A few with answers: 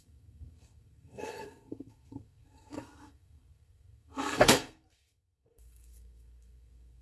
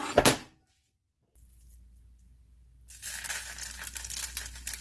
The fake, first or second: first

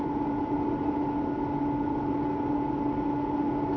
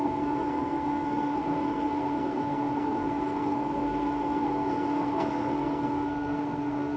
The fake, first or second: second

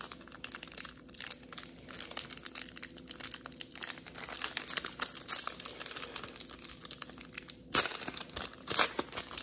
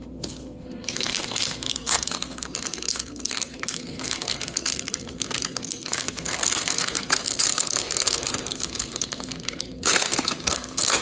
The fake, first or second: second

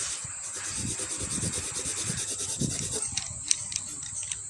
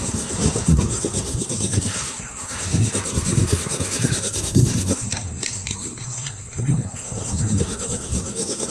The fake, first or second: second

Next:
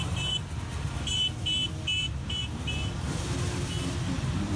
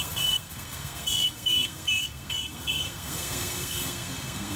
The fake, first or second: second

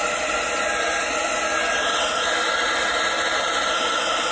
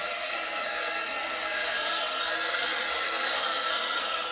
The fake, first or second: second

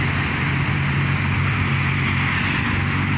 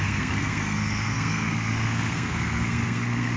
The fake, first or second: second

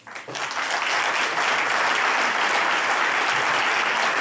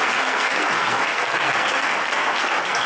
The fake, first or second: second